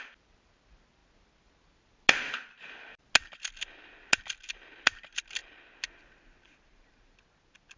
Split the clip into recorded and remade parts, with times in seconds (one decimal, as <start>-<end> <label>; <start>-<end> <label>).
0.0-7.8 recorded